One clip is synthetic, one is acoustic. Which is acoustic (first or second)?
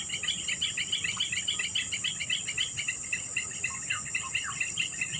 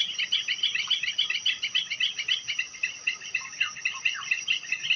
first